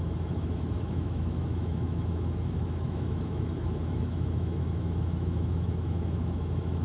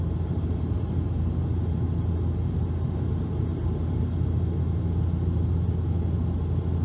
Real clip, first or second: second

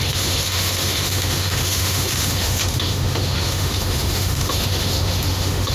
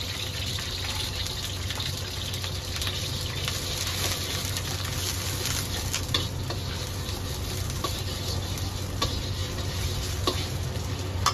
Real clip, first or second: second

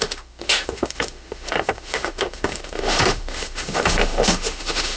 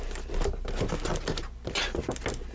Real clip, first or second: second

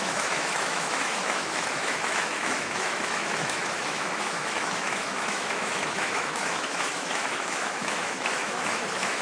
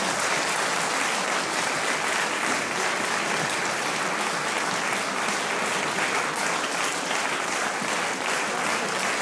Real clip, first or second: second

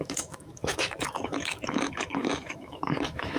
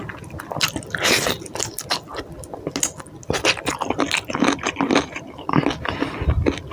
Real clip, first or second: second